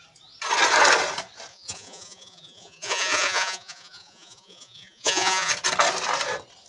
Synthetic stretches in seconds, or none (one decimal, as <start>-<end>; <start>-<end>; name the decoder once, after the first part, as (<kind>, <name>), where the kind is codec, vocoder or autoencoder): 1.5-5.5 (vocoder, Vocos)